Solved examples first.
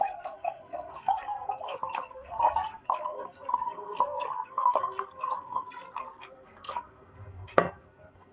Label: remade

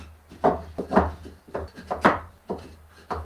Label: recorded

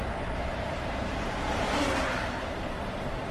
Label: remade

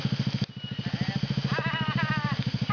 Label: recorded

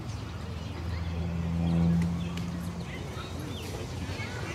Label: recorded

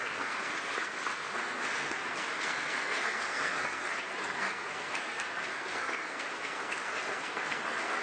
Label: remade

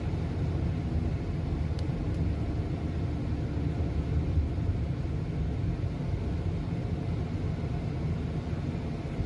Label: recorded